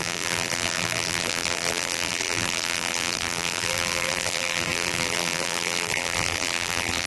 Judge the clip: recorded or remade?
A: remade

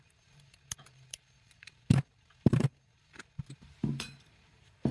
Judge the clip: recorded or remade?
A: remade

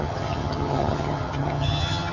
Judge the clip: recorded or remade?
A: remade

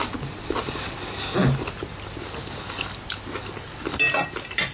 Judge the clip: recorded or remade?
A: recorded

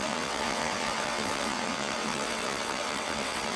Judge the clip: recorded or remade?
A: remade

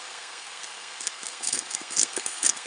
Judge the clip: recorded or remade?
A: remade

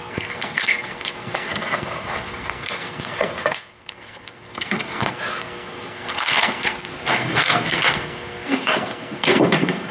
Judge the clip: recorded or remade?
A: remade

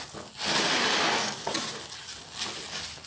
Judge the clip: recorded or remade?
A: recorded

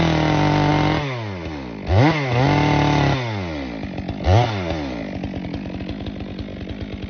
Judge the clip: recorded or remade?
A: recorded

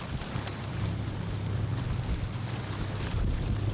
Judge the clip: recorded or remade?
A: recorded